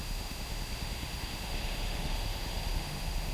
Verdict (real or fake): fake